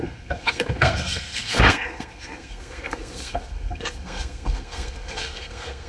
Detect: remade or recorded remade